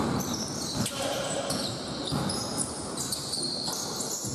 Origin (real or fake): real